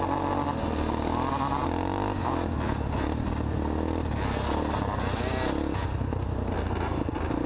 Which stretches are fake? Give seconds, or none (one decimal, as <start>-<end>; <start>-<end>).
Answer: none